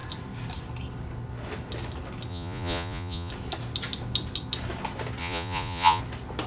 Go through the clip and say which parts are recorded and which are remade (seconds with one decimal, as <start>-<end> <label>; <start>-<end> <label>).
0.0-2.3 recorded; 2.3-3.3 remade; 3.3-5.2 recorded; 5.2-6.0 remade; 6.0-6.5 recorded